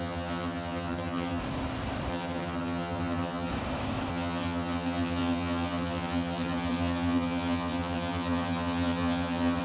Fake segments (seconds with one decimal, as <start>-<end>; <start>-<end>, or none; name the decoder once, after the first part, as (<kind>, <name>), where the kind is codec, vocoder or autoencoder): 0.0-1.4 (vocoder, HiFi-GAN); 2.1-3.5; 4.1-9.6

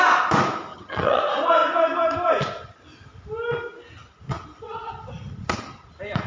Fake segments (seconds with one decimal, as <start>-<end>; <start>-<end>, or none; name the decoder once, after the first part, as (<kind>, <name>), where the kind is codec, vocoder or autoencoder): 0.7-1.2 (vocoder, HiFi-GAN)

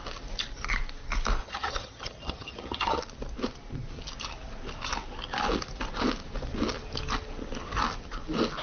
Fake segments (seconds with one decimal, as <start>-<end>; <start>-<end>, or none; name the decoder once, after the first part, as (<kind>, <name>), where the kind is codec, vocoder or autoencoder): 1.4-3.0 (vocoder, HiFi-GAN)

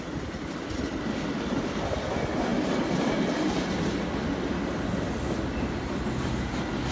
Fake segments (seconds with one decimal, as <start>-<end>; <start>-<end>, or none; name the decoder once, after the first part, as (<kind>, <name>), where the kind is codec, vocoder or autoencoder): none

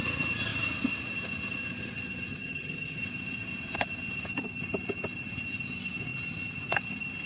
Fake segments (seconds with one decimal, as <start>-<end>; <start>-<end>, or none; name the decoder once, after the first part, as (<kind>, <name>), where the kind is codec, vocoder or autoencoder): 2.3-3.0 (vocoder, HiFi-GAN)

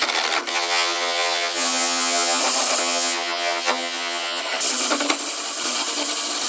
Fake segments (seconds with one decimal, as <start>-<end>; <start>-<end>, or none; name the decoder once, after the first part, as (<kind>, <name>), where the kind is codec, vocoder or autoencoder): 0.5-2.4 (vocoder, HiFi-GAN); 2.8-4.4